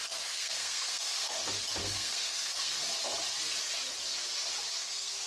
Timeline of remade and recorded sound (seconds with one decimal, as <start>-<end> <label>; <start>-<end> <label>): 0.0-1.4 remade; 1.4-1.8 recorded; 1.8-2.8 remade; 2.8-4.8 recorded; 4.8-5.3 remade